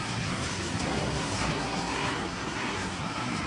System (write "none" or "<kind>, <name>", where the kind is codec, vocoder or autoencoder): codec, SNAC